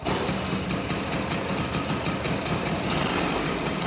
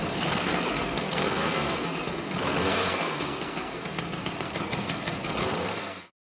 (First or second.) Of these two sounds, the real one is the first